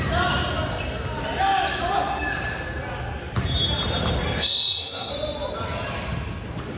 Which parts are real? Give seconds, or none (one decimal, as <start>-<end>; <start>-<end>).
0.0-4.4; 5.1-6.8